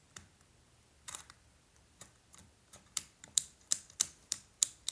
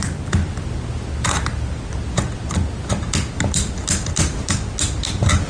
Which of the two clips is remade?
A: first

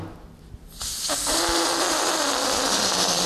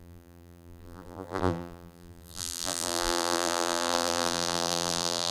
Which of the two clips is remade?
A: second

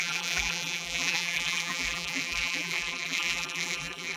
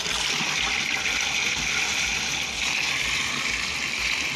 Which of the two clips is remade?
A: first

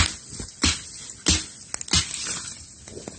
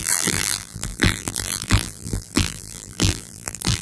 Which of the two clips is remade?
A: second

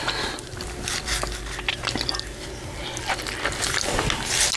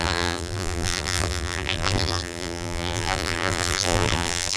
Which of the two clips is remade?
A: second